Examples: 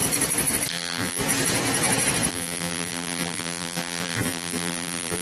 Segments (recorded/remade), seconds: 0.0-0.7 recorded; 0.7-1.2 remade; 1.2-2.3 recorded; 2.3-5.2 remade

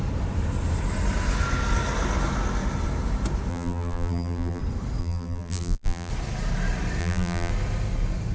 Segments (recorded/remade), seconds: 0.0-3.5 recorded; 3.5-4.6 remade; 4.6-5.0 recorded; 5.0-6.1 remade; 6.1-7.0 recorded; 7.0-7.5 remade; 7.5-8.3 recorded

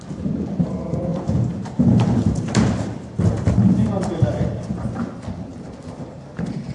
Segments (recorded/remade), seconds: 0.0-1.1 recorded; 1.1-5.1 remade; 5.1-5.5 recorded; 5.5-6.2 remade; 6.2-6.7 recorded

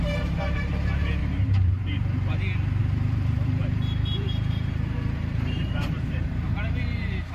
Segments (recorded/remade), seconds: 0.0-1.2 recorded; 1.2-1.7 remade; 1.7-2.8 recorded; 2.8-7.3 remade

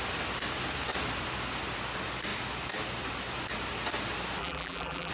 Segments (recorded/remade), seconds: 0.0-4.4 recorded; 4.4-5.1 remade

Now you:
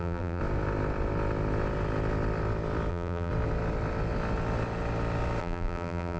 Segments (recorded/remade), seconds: 0.0-0.4 remade; 0.4-2.9 recorded; 2.9-3.3 remade; 3.3-5.4 recorded; 5.4-6.2 remade